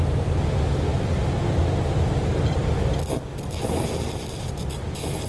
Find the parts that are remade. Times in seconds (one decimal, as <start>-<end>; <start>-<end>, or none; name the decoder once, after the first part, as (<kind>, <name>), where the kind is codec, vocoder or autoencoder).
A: none